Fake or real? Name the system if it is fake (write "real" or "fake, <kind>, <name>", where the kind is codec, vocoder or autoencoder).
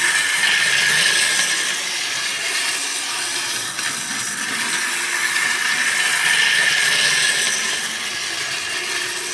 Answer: real